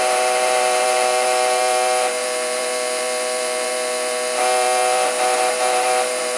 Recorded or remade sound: remade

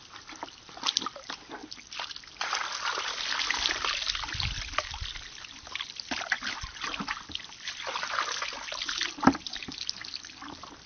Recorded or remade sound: recorded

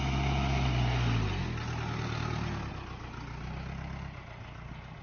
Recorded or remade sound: recorded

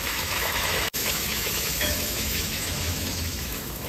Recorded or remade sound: remade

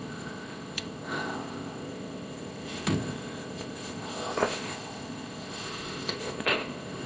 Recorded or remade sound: remade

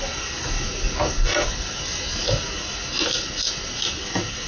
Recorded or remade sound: recorded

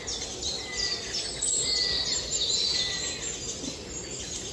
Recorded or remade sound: recorded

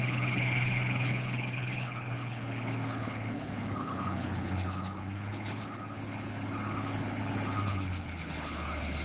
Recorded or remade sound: remade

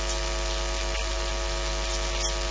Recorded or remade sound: recorded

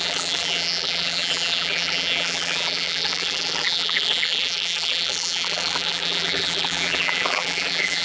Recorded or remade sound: remade